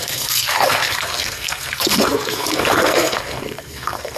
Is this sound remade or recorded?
remade